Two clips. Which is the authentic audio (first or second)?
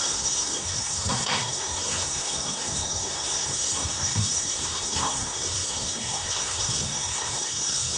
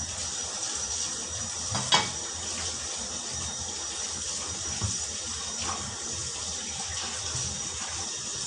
second